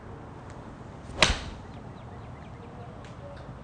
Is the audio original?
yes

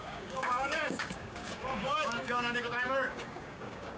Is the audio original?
no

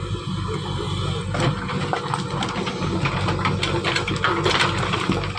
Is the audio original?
yes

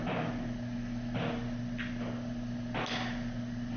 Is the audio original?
yes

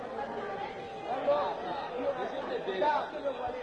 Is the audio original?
yes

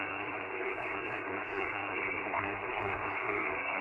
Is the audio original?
no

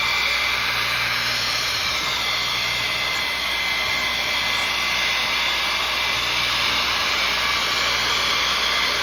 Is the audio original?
no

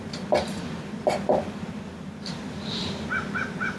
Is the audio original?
yes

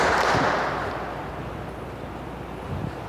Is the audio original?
yes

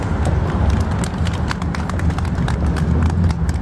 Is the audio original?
yes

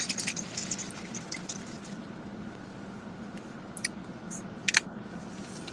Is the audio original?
yes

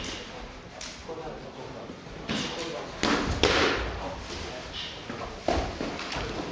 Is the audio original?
yes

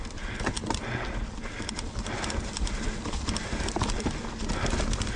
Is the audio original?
yes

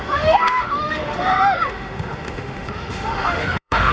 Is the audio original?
no